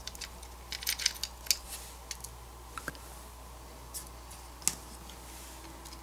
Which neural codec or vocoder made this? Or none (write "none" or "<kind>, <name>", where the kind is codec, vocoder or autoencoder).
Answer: none